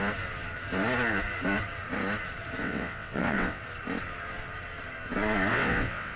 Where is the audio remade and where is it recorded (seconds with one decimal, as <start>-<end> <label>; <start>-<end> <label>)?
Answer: 0.0-2.6 recorded; 2.6-3.6 remade; 3.6-5.5 recorded; 5.5-6.2 remade